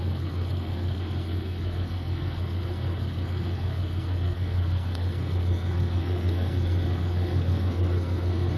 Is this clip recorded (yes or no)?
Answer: no